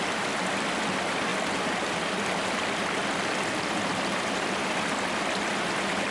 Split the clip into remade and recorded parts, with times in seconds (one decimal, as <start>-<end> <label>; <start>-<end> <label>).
0.0-6.1 recorded

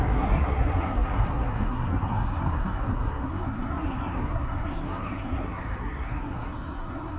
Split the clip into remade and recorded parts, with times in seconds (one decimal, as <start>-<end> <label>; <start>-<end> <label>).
0.0-7.2 remade

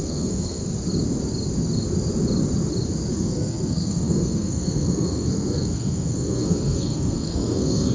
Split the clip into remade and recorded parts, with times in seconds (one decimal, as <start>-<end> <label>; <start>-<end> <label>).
0.0-0.6 remade; 0.6-3.1 recorded; 3.1-7.9 remade

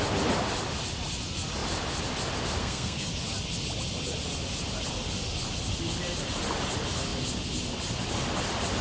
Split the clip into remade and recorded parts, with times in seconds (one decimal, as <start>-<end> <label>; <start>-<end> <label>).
0.0-2.6 recorded; 2.6-3.1 remade; 3.1-8.8 recorded

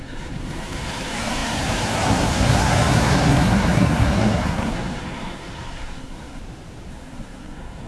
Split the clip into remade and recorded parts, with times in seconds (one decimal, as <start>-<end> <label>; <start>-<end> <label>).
0.0-6.4 remade; 6.4-6.9 recorded; 6.9-7.9 remade

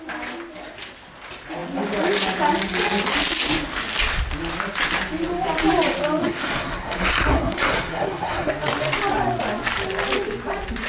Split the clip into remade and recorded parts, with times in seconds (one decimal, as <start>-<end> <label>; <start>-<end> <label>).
0.0-6.2 recorded; 6.2-8.5 remade; 8.5-10.9 recorded